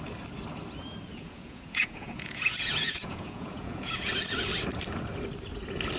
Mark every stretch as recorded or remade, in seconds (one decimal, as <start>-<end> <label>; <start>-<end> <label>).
0.0-1.1 recorded; 1.1-4.1 remade; 4.1-6.0 recorded